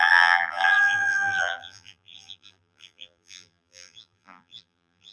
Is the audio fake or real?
fake